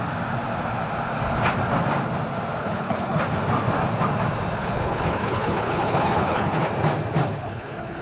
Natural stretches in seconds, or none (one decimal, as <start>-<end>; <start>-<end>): 0.0-2.6; 3.2-4.6; 6.7-7.2